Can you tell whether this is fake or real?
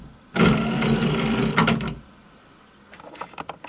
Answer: real